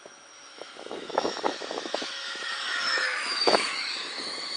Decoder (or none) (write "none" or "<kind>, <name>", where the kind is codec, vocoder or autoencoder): autoencoder, DAC-VAE